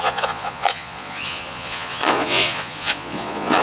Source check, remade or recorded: remade